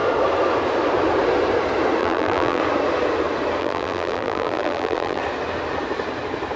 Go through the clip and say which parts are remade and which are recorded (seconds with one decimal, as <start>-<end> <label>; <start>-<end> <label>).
0.0-2.0 recorded; 2.0-2.6 remade; 2.6-3.6 recorded; 3.6-5.2 remade; 5.2-6.6 recorded